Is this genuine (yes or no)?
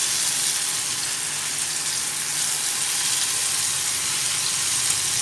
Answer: yes